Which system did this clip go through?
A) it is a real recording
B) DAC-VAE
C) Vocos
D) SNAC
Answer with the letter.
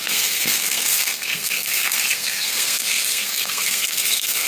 D